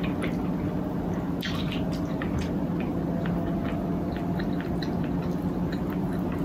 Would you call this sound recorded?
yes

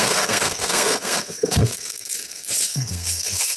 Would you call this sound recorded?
no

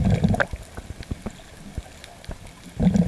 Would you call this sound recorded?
yes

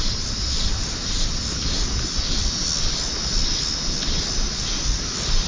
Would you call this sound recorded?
yes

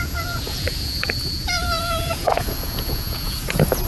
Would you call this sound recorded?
no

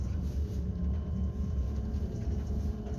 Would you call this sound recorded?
no